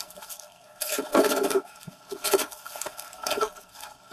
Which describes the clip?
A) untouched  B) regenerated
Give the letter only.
B